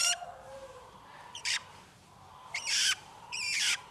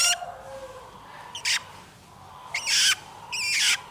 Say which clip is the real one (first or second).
second